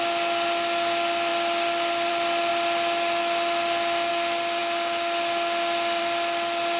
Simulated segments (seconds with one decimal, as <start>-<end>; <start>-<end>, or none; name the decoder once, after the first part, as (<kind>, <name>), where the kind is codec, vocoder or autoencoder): none